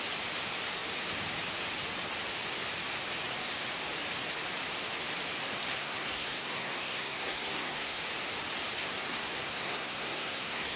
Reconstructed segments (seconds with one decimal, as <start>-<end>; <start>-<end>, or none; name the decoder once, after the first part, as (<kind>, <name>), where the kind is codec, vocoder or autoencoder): 5.7-8.0 (codec, SNAC); 9.1-10.8